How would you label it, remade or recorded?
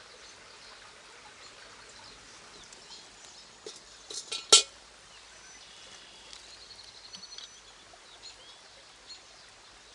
recorded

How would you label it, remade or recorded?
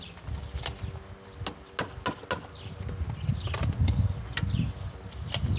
recorded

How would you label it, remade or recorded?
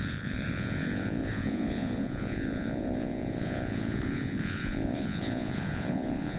remade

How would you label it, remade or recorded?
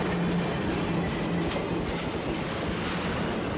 recorded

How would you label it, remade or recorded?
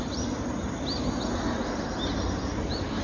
recorded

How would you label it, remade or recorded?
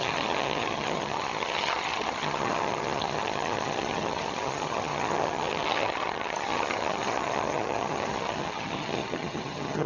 remade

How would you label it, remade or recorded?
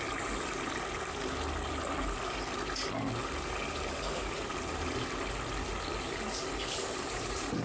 recorded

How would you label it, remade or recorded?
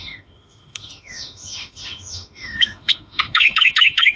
remade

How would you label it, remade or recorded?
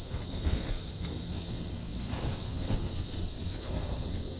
remade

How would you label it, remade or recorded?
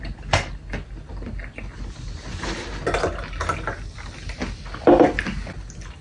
recorded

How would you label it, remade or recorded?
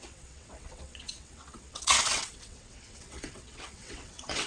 remade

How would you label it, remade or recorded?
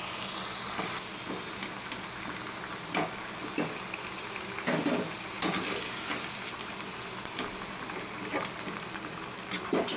recorded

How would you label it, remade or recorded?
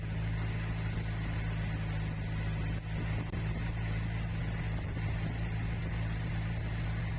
recorded